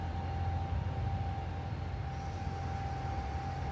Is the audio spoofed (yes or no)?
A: no